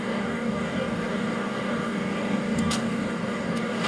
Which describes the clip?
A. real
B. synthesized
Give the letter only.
B